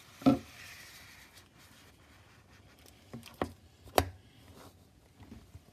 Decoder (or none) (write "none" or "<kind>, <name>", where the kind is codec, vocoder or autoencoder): none